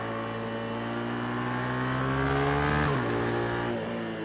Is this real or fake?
real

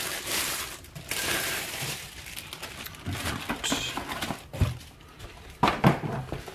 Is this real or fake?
real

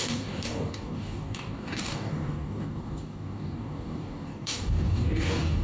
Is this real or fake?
fake